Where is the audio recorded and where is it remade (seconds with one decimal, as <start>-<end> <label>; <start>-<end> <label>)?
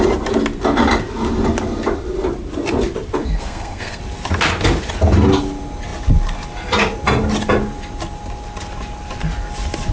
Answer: 0.0-3.2 recorded; 3.2-4.0 remade; 4.0-9.9 recorded